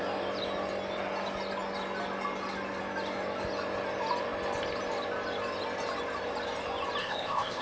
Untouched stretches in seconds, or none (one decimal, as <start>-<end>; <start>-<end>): 0.0-7.0